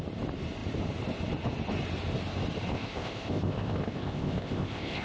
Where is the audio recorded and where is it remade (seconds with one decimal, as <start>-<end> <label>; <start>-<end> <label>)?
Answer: 0.0-2.7 recorded; 2.7-5.0 remade

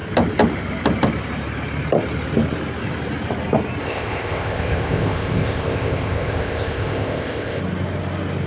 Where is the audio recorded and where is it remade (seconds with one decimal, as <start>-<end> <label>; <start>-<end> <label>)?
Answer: 0.0-3.8 recorded; 3.8-7.6 remade; 7.6-8.5 recorded

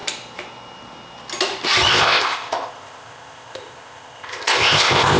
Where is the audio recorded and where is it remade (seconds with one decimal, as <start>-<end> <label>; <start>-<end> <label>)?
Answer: 0.0-1.9 recorded; 1.9-5.2 remade

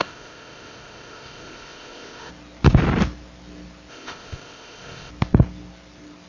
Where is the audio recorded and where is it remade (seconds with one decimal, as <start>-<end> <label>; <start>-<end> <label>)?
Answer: 0.0-2.3 remade; 2.3-3.9 recorded; 3.9-5.1 remade; 5.1-6.3 recorded

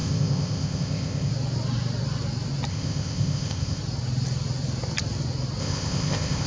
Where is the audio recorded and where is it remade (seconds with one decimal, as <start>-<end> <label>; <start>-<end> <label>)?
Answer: 0.0-1.3 remade; 1.3-2.7 recorded; 2.7-3.8 remade; 3.8-5.6 recorded; 5.6-6.5 remade

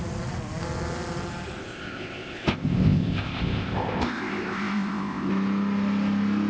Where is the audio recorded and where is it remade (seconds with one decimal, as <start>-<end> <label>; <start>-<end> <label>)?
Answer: 0.0-1.6 recorded; 1.6-5.3 remade; 5.3-6.5 recorded